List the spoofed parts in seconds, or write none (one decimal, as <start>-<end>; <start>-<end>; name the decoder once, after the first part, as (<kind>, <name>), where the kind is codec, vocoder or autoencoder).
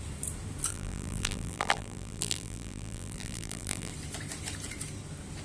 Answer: 0.7-3.9 (vocoder, BigVGAN v2)